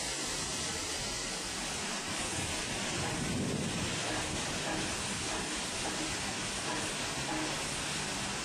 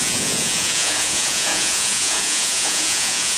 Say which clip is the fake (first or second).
second